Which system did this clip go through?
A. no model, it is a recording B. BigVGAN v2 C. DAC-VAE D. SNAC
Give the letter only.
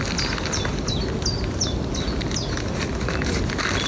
A